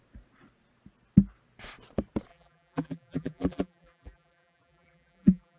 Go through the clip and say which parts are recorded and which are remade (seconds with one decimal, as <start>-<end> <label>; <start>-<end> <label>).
0.0-2.3 recorded; 2.3-5.6 remade